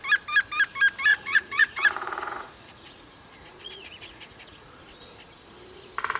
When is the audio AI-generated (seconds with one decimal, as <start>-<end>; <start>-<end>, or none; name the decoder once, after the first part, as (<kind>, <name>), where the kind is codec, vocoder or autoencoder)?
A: 1.1-4.8 (vocoder, Vocos)